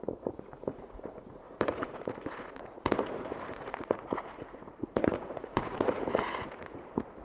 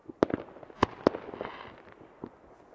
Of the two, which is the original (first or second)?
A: second